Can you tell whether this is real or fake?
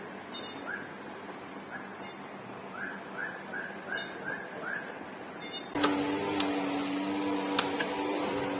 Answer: real